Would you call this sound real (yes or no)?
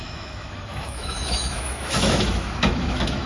no